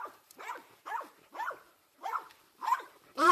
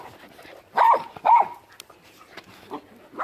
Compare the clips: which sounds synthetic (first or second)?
first